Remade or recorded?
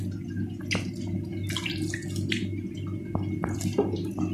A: recorded